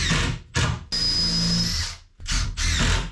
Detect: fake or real real